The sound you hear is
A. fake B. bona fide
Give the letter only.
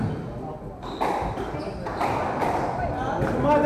B